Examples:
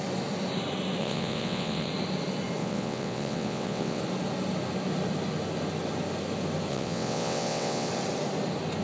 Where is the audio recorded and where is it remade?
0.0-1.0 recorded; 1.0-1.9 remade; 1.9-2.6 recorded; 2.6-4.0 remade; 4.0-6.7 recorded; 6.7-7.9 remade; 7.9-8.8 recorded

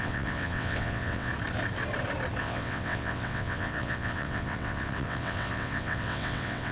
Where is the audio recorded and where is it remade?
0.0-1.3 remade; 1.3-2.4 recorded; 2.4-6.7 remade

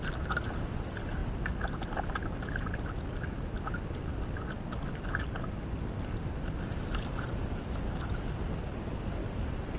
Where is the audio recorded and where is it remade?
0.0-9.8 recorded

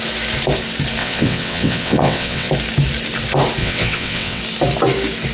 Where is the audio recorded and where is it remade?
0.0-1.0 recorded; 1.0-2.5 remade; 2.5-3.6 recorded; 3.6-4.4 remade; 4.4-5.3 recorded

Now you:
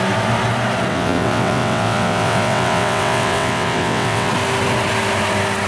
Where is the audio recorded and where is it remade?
0.0-0.9 recorded; 0.9-4.3 remade; 4.3-5.7 recorded

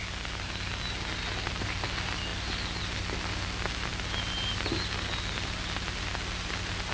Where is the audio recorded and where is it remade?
0.0-6.9 recorded